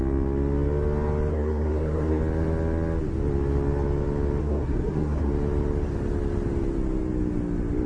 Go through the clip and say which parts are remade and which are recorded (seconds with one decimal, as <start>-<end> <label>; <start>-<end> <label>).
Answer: 0.0-1.3 recorded; 1.3-2.2 remade; 2.2-4.4 recorded; 4.4-5.3 remade; 5.3-7.9 recorded